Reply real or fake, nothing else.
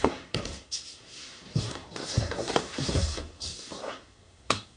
fake